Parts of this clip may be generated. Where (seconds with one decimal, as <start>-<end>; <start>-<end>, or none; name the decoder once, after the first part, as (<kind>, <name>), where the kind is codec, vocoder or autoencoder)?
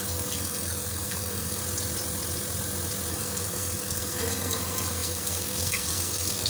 0.0-1.6 (codec, SNAC); 3.1-6.5